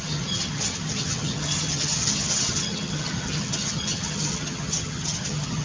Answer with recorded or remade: remade